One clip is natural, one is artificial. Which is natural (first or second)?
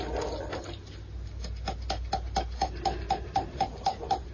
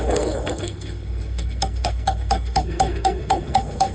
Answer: first